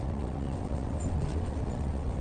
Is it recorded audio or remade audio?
remade